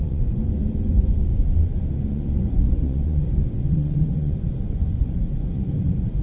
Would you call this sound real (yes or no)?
no